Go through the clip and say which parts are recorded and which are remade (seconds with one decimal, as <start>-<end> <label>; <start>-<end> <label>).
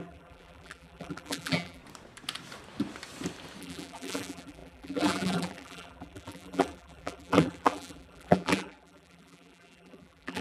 0.0-1.8 remade; 1.8-3.6 recorded; 3.6-10.4 remade